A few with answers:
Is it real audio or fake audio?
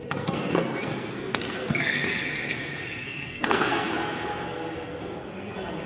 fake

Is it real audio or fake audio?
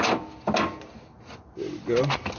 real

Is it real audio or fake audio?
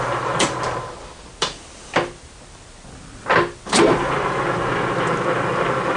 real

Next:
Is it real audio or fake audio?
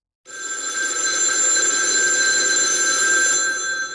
real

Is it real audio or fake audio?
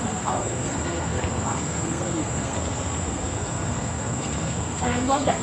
fake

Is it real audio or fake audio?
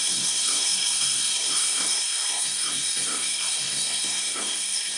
fake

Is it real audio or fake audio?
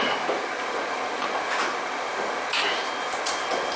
real